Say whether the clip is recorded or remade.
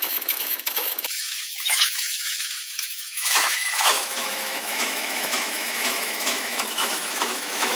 remade